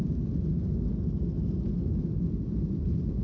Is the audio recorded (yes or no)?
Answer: yes